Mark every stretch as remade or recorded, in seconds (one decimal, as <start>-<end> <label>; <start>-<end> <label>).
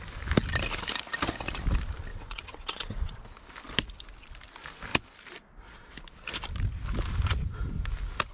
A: 0.0-2.1 recorded; 2.1-3.2 remade; 3.2-8.3 recorded